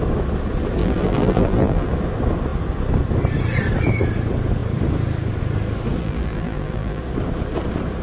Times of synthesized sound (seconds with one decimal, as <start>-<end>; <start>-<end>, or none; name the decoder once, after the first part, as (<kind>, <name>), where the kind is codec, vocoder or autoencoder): 0.8-1.9 (vocoder, BigVGAN v2); 6.0-7.0